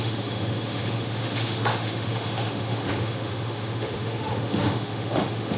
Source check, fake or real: fake